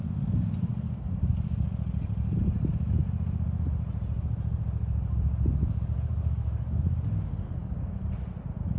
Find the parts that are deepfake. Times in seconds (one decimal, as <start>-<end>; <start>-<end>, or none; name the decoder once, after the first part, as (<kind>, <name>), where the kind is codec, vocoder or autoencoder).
6.1-6.8 (codec, DAC)